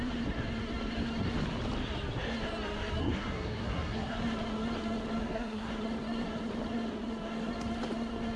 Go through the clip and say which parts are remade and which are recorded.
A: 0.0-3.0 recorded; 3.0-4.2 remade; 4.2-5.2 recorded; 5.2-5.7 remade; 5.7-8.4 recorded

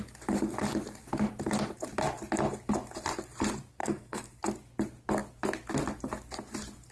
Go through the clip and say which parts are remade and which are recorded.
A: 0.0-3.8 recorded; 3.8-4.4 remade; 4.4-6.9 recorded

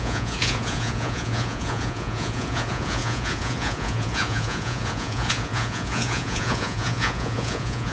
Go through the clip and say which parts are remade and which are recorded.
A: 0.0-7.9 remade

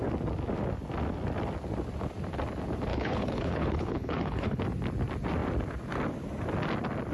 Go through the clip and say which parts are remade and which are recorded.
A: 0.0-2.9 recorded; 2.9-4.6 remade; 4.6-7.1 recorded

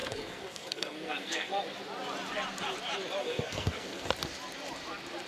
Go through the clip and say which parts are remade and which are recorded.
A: 0.0-1.6 remade; 1.6-3.2 recorded; 3.2-4.1 remade; 4.1-5.3 recorded